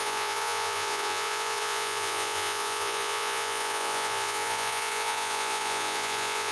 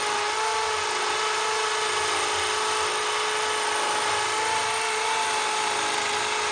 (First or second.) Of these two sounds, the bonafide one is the second